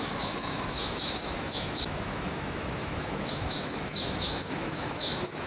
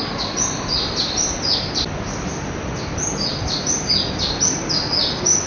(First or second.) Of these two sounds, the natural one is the second